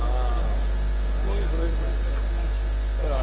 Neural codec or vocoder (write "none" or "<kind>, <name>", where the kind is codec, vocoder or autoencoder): none